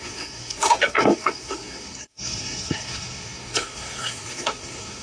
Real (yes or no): no